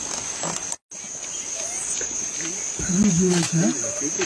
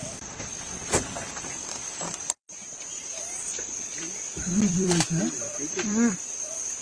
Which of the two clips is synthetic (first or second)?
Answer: second